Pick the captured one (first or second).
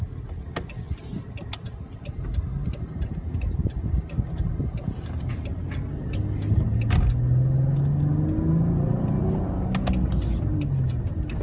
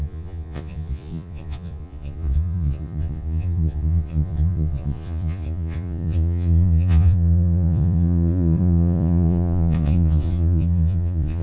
first